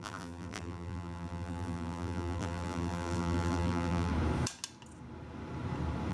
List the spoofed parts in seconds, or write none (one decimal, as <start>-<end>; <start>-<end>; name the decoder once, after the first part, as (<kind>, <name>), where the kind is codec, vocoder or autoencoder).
0.0-4.1 (vocoder, BigVGAN v2)